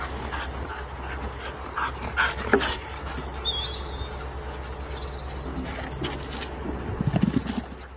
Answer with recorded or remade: recorded